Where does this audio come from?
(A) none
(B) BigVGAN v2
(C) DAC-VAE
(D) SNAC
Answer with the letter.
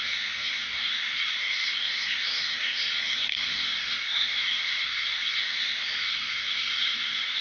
D